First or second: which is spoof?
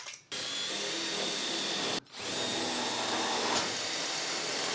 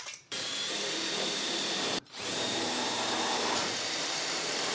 second